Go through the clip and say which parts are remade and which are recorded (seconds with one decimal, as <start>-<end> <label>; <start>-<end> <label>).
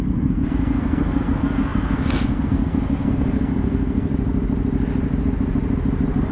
0.0-4.1 remade; 4.1-6.3 recorded